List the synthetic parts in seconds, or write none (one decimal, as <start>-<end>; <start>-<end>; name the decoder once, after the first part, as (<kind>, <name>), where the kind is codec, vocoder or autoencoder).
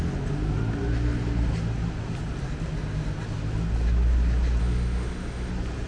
4.6-5.5 (autoencoder, DAC-VAE)